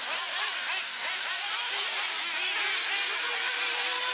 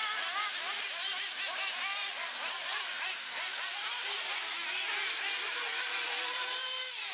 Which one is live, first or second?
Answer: first